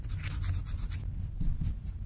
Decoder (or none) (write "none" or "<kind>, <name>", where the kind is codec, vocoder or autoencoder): none